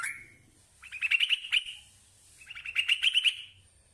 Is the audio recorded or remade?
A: recorded